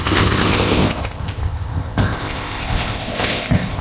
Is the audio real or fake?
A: fake